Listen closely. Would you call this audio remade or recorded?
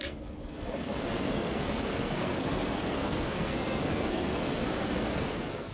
remade